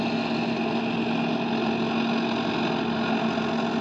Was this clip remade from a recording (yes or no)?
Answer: no